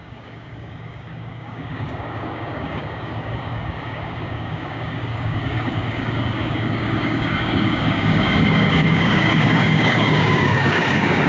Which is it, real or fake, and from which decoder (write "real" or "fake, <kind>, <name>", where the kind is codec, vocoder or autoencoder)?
fake, codec, DAC